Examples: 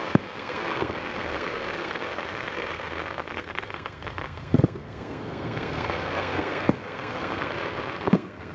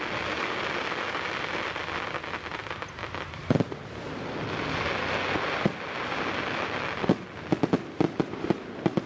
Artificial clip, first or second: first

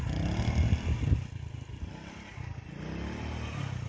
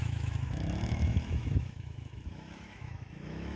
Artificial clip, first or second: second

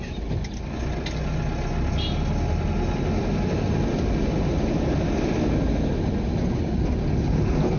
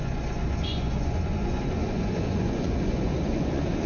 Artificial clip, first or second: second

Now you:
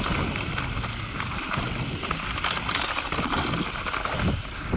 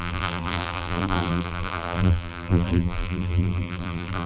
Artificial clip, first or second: second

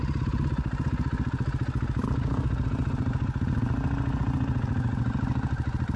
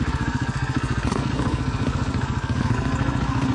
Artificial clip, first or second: second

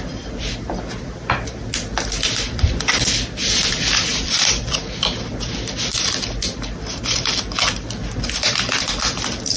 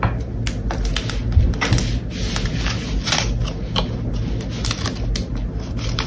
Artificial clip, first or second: first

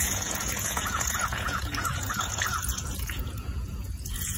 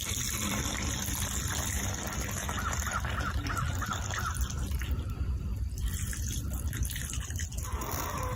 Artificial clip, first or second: first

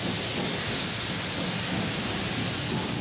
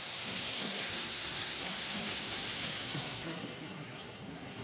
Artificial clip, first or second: second